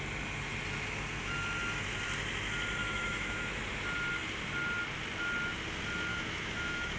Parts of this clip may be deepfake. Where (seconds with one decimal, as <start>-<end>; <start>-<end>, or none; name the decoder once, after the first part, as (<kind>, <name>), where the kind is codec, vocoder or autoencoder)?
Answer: 2.8-3.6 (autoencoder, DAC-VAE); 6.1-7.0